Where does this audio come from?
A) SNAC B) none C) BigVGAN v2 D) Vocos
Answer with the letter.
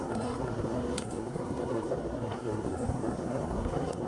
A